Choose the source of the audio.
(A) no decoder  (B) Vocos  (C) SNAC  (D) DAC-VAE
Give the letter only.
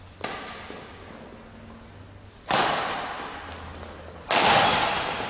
A